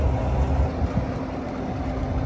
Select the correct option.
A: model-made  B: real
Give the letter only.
B